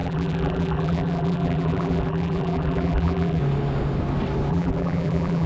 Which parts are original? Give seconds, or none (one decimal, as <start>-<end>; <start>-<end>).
3.4-4.5